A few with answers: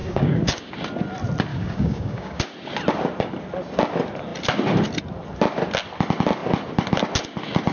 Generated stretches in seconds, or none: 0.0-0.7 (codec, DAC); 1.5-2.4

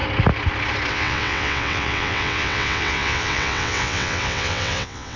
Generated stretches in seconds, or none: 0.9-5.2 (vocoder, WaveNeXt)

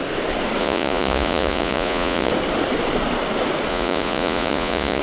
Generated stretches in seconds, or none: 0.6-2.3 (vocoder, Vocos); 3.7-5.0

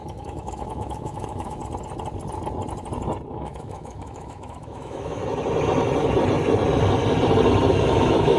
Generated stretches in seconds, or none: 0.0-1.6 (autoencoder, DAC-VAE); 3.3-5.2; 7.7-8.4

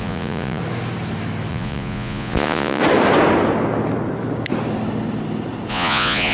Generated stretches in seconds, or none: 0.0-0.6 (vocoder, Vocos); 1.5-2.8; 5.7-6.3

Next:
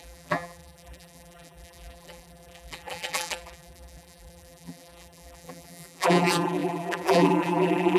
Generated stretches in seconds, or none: 0.0-8.0 (vocoder, BigVGAN v2)